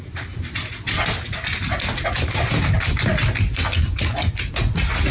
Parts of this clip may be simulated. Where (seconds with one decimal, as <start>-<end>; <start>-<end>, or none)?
3.8-4.3